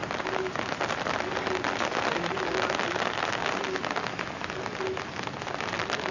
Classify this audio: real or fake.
real